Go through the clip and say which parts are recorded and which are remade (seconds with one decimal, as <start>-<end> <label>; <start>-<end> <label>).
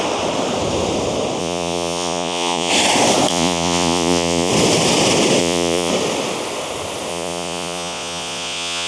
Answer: 0.0-1.4 recorded; 1.4-2.7 remade; 2.7-3.3 recorded; 3.3-4.5 remade; 4.5-5.4 recorded; 5.4-5.9 remade; 5.9-7.1 recorded; 7.1-8.9 remade